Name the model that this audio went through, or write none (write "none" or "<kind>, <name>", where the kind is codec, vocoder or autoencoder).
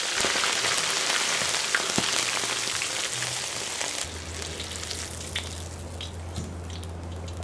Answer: none